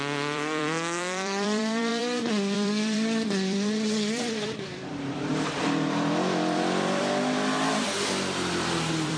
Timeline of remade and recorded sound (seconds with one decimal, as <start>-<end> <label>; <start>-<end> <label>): 0.0-9.2 remade